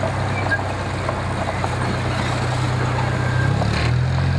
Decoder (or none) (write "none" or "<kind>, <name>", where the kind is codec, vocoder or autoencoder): none